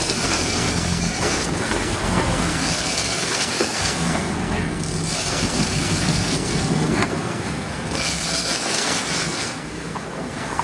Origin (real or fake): fake